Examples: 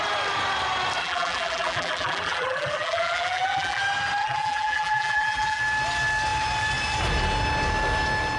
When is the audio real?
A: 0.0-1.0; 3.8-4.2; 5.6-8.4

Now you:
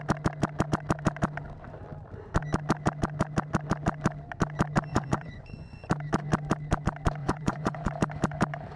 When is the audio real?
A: 0.0-4.9; 5.9-7.2; 7.9-8.8